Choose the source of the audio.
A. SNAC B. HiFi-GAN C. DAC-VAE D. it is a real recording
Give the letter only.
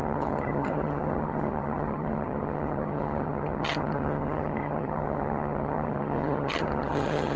B